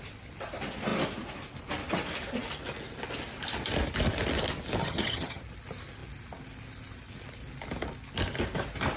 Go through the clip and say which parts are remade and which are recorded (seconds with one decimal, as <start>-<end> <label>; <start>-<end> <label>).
0.0-4.8 recorded; 4.8-5.4 remade; 5.4-9.0 recorded